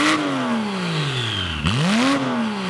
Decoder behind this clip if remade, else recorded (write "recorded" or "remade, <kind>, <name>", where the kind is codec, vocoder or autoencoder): recorded